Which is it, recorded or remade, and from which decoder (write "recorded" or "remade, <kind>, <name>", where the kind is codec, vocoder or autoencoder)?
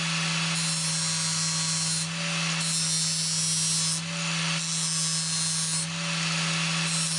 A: recorded